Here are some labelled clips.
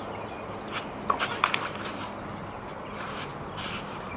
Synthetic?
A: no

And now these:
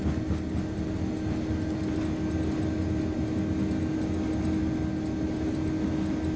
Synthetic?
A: no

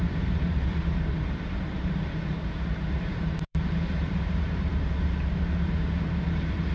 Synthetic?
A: yes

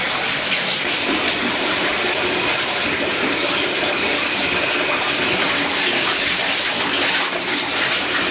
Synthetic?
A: yes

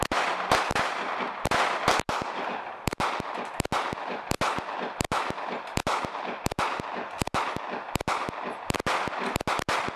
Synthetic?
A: no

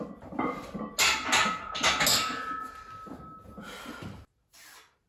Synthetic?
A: no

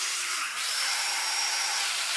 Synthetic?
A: yes